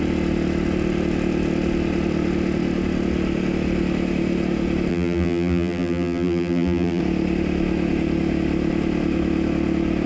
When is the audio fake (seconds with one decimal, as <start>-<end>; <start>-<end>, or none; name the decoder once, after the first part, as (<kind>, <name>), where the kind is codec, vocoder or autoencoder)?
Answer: 4.9-7.0 (vocoder, BigVGAN v2)

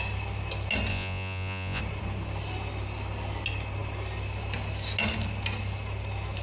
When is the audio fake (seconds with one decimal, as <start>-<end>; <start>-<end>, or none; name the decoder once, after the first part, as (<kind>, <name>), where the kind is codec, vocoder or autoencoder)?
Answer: 0.9-1.8 (vocoder, Vocos)

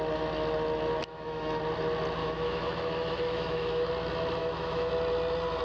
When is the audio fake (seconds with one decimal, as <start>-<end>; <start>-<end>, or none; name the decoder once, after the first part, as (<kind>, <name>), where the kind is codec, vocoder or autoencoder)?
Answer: 1.0-1.6 (autoencoder, DAC-VAE); 2.2-3.9; 4.4-4.9

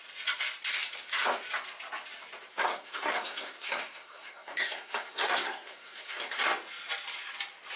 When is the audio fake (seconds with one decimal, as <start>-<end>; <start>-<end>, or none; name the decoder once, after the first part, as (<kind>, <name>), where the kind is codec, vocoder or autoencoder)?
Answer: 2.7-6.4 (codec, SNAC)

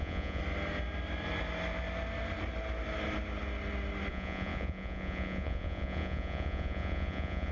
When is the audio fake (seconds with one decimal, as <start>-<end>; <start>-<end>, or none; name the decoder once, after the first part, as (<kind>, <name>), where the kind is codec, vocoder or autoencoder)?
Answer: 0.0-0.4 (vocoder, Vocos); 4.1-7.5

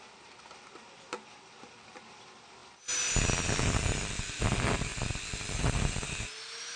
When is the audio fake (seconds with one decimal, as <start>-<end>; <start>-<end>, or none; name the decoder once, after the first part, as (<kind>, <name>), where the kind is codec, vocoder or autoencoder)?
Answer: none

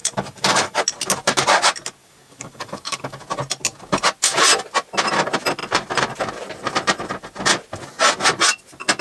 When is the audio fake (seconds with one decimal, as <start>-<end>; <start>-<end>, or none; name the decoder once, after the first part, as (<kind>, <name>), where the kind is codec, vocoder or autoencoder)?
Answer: 0.0-0.8 (codec, DAC); 2.0-3.2